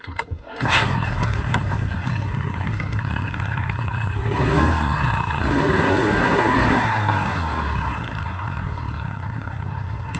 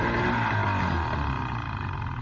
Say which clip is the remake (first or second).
first